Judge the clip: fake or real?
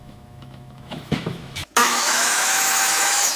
fake